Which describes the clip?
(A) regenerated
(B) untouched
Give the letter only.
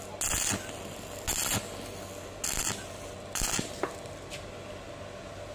B